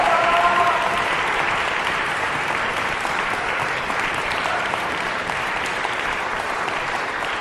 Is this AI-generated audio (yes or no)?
yes